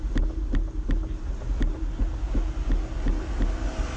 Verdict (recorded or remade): recorded